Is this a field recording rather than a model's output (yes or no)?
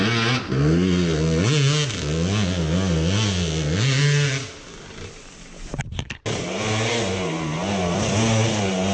yes